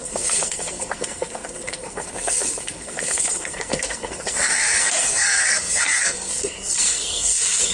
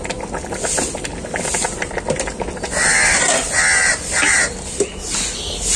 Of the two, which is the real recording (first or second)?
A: second